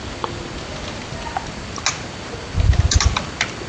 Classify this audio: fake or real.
real